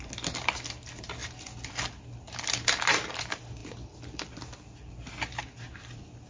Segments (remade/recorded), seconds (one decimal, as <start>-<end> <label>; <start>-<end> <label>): 0.0-6.3 recorded